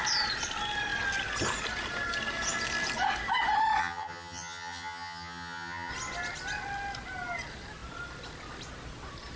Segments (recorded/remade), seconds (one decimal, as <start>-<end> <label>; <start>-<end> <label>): 0.0-3.8 recorded; 3.8-5.9 remade; 5.9-9.4 recorded